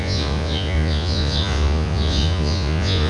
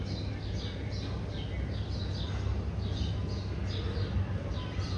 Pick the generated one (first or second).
first